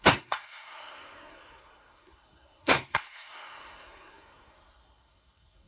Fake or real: fake